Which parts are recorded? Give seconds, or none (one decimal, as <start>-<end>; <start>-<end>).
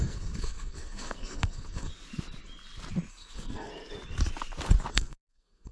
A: 1.9-3.1; 3.7-4.9